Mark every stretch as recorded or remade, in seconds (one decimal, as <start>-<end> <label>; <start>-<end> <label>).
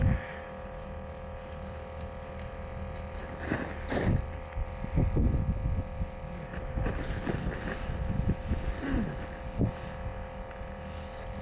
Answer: 0.0-11.4 recorded